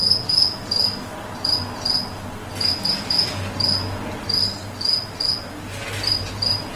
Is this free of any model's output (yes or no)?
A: yes